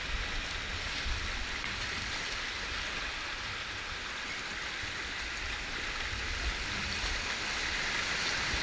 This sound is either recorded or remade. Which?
recorded